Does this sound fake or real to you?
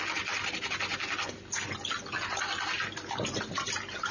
real